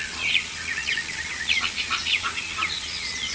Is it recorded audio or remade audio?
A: remade